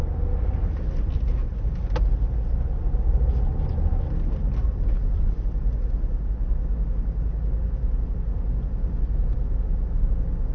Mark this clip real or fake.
real